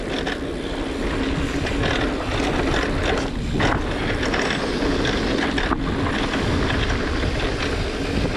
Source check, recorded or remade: recorded